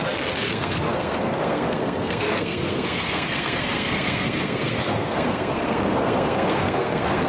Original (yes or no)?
no